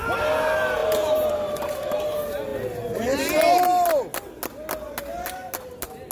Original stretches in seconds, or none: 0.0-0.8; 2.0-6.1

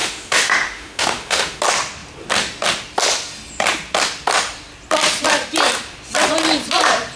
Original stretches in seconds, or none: 1.6-7.2

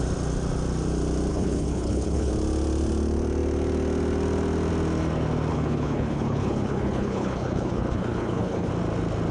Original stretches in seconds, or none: 0.0-1.3; 2.3-5.5; 8.7-9.3

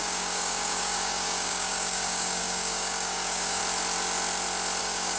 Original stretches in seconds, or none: 3.6-4.8

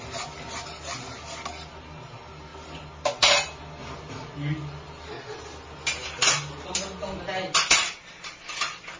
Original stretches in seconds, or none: 0.0-9.0

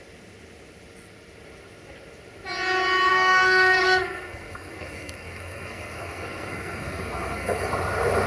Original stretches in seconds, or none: 0.0-3.1; 7.7-8.3

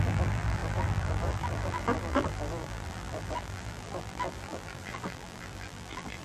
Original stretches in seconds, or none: none

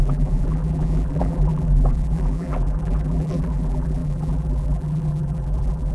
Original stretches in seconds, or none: none